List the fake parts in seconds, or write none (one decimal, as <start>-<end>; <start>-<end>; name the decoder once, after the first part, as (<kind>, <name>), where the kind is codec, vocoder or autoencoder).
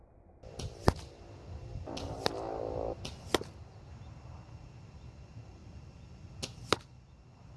5.6-6.8 (vocoder, BigVGAN v2)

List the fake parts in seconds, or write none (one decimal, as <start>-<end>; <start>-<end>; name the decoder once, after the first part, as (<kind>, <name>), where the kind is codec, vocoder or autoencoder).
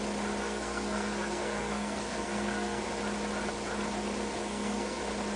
0.4-2.8 (codec, SNAC); 4.4-5.0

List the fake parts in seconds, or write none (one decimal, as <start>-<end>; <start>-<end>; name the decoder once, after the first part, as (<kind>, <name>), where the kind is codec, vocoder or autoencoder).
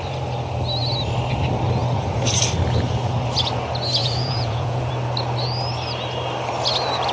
4.0-4.9 (vocoder, Vocos)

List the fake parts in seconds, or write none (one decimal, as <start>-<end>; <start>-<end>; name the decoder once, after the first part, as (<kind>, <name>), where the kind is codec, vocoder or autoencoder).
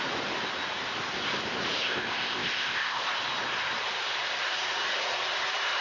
1.8-3.1 (codec, ZipCodec)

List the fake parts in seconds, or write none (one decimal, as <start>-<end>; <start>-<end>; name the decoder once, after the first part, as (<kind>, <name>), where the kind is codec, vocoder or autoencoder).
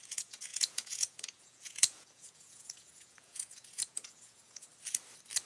0.0-4.7 (vocoder, Vocos)